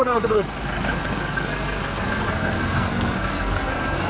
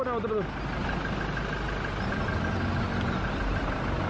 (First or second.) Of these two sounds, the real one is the second